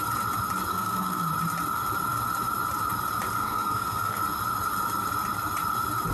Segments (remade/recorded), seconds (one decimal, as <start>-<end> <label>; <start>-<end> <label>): 0.0-0.7 recorded; 0.7-1.3 remade; 1.3-3.4 recorded; 3.4-4.2 remade; 4.2-6.1 recorded

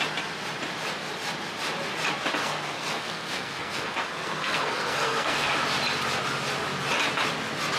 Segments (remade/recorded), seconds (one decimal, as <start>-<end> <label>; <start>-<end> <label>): 0.0-2.4 recorded; 2.4-5.5 remade; 5.5-7.8 recorded

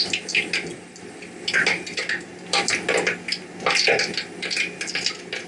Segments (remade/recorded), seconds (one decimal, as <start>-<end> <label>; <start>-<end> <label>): 0.0-5.5 recorded

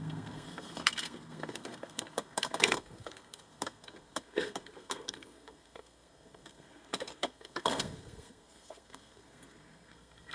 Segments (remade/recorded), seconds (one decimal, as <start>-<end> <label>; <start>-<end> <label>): 0.0-10.3 remade

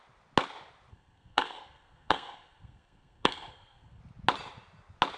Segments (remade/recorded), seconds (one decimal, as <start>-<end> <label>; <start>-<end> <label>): 0.0-0.9 recorded; 0.9-4.0 remade; 4.0-5.2 recorded